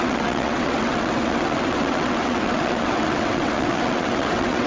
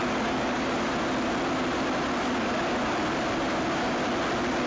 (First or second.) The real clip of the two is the second